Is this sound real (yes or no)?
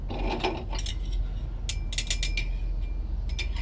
yes